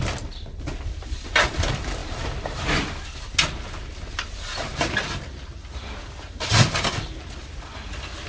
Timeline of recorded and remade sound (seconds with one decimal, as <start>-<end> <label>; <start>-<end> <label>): 0.0-8.3 recorded